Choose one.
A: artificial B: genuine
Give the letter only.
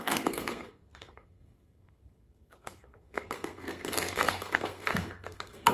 A